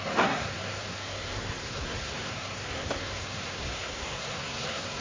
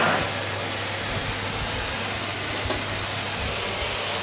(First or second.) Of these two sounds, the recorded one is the second